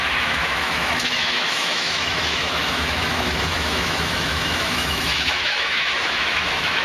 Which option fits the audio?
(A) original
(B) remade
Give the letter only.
B